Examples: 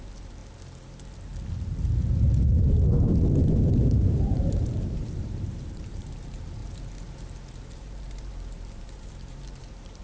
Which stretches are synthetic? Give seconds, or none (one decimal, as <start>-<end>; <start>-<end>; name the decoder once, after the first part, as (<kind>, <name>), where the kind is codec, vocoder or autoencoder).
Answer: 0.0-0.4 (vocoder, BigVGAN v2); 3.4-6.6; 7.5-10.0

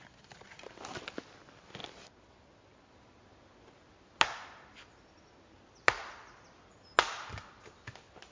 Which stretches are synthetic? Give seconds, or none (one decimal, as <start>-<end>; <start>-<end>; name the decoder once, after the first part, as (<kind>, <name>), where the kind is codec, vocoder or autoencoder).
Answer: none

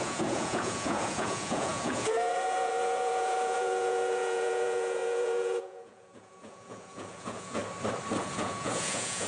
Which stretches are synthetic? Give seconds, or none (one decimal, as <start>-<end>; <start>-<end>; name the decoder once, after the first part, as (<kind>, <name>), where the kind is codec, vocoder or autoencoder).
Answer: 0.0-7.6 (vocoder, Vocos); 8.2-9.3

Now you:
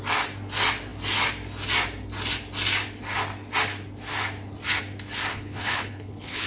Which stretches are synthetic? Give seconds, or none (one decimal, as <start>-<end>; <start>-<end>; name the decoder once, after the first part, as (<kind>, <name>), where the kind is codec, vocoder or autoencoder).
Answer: 5.3-6.5 (codec, HILCodec)

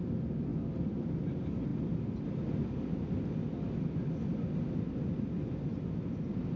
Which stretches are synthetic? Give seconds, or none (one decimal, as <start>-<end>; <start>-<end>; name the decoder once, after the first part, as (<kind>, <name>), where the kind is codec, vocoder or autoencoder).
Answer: none